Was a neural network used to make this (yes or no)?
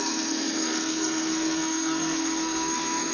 yes